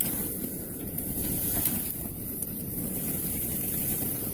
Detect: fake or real fake